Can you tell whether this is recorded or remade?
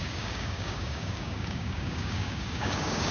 remade